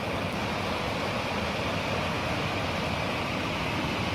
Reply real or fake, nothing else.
real